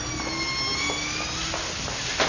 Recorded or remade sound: recorded